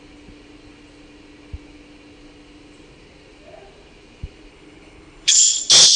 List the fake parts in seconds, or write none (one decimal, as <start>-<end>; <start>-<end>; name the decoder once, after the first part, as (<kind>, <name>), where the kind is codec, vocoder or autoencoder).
4.5-5.6 (codec, HILCodec)